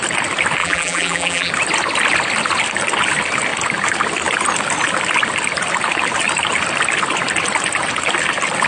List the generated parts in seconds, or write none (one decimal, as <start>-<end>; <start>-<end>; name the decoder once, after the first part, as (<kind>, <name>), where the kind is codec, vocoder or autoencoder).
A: 0.6-1.5 (vocoder, BigVGAN v2)